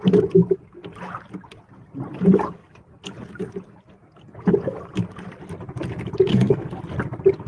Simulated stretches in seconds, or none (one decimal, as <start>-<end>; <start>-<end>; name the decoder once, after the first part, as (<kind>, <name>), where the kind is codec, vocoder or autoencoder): 6.3-6.8 (codec, SNAC)